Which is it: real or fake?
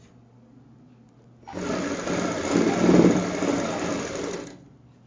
real